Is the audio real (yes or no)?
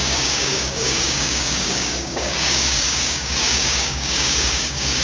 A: no